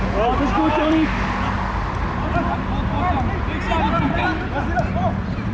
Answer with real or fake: real